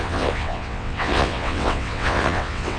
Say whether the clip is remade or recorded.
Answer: remade